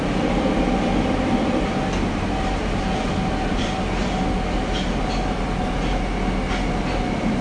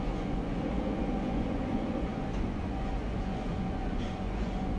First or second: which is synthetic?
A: second